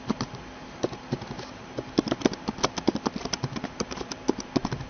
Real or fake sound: real